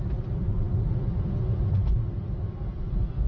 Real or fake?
real